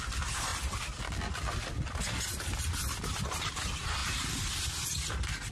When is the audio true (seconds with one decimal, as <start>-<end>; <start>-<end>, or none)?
0.0-4.0; 4.5-5.5